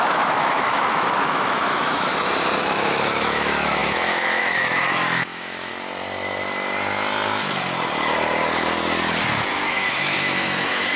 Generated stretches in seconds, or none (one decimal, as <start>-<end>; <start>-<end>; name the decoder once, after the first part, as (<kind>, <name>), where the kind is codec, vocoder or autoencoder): 0.0-2.1 (autoencoder, DAC-VAE); 2.6-5.7; 9.5-11.0